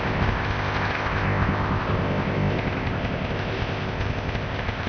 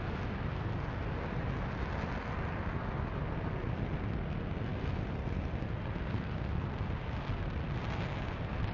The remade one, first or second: first